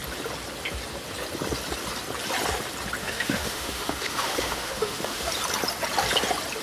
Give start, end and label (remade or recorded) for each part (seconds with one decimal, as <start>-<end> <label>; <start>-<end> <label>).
0.0-3.0 recorded; 3.0-5.3 remade; 5.3-6.6 recorded